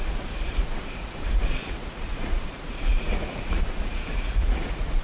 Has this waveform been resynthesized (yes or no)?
yes